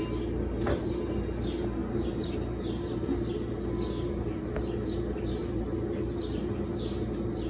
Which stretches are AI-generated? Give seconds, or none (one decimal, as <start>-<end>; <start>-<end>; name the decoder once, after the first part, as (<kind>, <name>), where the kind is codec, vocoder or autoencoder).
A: none